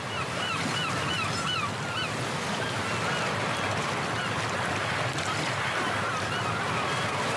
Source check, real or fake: real